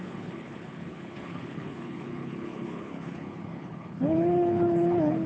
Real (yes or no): no